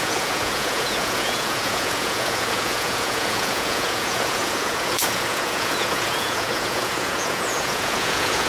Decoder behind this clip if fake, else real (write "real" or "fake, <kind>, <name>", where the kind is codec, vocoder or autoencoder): fake, vocoder, Vocos